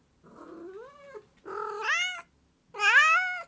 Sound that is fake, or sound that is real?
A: real